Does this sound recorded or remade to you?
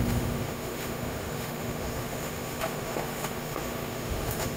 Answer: remade